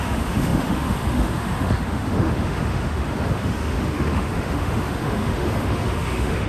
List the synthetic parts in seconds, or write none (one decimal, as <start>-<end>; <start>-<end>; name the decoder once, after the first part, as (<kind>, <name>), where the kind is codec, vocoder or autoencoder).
0.0-6.5 (autoencoder, DAC-VAE)